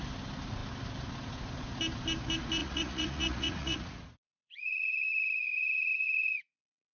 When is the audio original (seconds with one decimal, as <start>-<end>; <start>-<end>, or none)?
0.0-2.6